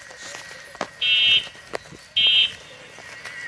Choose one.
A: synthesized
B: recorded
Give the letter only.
B